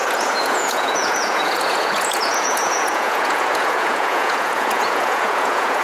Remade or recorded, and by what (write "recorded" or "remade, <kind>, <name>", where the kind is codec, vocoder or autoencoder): remade, vocoder, Vocos